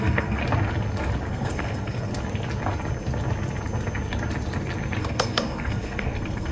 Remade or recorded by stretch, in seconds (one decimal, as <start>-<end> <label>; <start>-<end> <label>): 0.0-0.4 remade; 0.4-1.3 recorded; 1.3-2.1 remade; 2.1-5.0 recorded; 5.0-6.5 remade